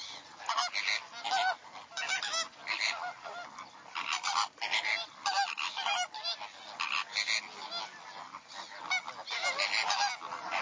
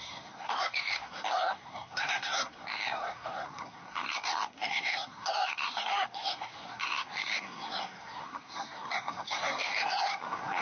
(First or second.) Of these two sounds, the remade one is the second